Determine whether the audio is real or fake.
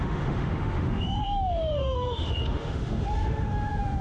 fake